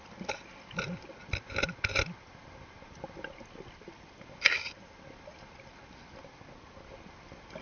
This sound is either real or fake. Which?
real